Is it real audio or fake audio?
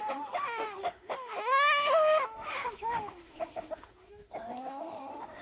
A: fake